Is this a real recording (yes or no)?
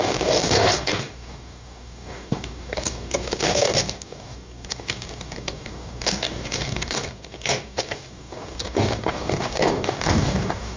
no